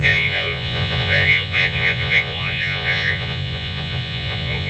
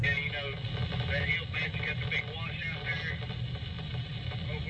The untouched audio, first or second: second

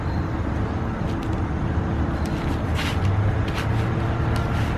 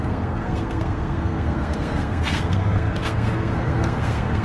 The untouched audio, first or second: first